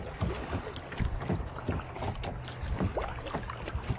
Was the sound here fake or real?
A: real